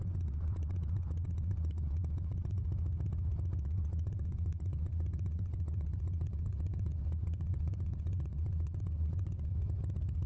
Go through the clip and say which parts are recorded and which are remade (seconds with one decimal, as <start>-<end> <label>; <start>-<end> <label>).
0.0-2.6 remade; 2.6-3.6 recorded; 3.6-9.5 remade; 9.5-10.3 recorded